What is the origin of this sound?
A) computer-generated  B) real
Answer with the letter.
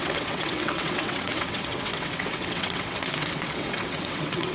A